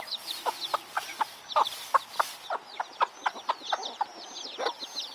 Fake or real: real